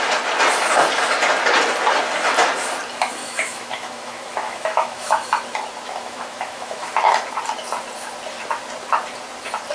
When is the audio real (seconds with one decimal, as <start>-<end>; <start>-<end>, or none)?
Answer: 0.0-3.2; 5.3-6.0; 6.9-9.7